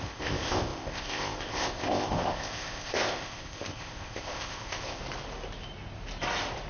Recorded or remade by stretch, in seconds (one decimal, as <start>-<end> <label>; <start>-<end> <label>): 0.0-5.0 remade; 5.0-6.7 recorded

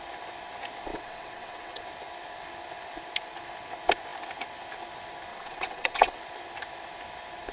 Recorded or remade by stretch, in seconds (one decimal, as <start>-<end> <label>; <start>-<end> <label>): 0.0-0.9 recorded; 0.9-1.8 remade; 1.8-5.3 recorded; 5.3-6.2 remade; 6.2-7.5 recorded

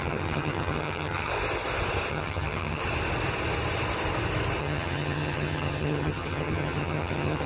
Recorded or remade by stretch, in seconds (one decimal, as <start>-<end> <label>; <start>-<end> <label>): 0.0-1.3 remade; 1.3-2.1 recorded; 2.1-2.8 remade; 2.8-4.6 recorded; 4.6-7.5 remade

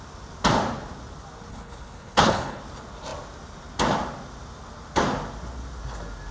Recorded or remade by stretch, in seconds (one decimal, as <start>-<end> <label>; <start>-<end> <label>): 0.0-1.5 recorded; 1.5-2.6 remade; 2.6-6.3 recorded

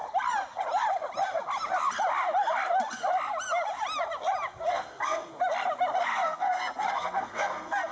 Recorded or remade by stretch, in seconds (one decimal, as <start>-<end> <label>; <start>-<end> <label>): 0.0-4.7 recorded; 4.7-5.3 remade; 5.3-6.0 recorded; 6.0-7.9 remade

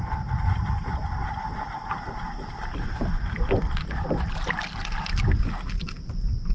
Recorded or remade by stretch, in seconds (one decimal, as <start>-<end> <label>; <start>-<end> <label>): 0.0-6.5 recorded

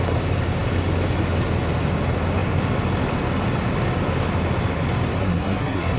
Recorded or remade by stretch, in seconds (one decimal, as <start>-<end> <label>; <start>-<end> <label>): 0.0-5.2 recorded; 5.2-6.0 remade